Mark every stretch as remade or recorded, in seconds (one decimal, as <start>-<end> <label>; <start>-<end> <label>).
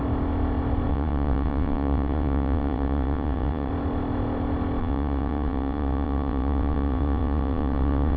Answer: 0.0-0.9 recorded; 0.9-3.7 remade; 3.7-4.8 recorded; 4.8-8.2 remade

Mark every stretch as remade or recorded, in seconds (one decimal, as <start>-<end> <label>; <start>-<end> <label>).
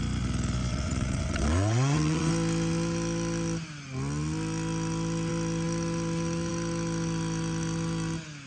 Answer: 0.0-0.7 recorded; 0.7-2.3 remade; 2.3-8.5 recorded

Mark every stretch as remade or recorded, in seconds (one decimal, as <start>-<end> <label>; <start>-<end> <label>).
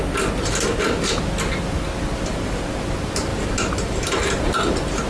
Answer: 0.0-5.1 recorded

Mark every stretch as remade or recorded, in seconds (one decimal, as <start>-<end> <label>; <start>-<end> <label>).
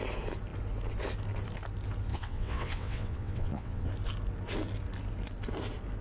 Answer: 0.0-2.1 recorded; 2.1-3.9 remade; 3.9-6.0 recorded